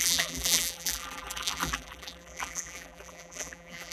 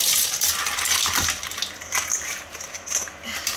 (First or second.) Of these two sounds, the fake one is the first